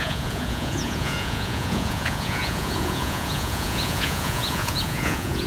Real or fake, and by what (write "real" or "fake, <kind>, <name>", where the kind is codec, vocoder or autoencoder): fake, vocoder, Vocos